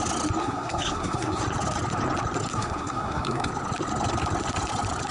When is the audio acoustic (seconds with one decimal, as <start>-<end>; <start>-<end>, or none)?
0.0-0.4; 1.4-2.5; 3.5-5.1